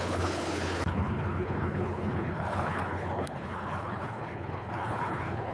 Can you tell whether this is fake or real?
fake